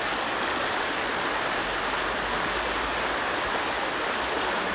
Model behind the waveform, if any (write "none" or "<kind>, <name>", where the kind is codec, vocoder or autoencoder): none